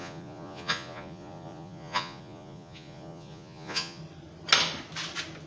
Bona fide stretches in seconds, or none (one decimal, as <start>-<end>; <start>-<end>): 4.0-5.5